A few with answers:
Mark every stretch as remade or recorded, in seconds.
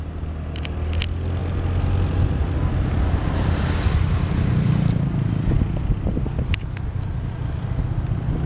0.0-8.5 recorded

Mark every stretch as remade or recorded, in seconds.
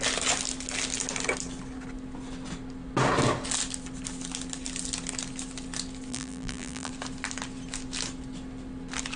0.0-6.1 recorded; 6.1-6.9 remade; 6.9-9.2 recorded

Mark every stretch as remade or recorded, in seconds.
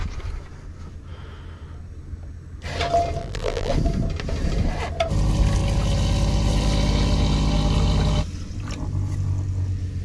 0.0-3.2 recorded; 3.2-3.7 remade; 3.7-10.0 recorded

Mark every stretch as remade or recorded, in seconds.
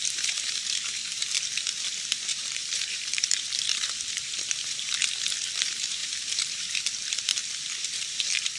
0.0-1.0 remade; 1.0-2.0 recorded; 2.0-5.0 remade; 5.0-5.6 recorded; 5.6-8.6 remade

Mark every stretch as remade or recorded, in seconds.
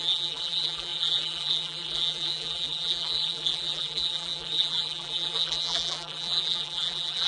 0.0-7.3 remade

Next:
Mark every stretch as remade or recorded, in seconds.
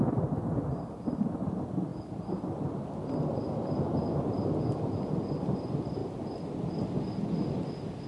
0.0-8.1 recorded